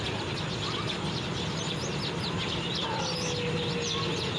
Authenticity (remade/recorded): recorded